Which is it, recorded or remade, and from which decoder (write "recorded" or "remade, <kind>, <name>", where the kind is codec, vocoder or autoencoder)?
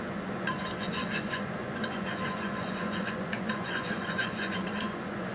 remade, vocoder, Vocos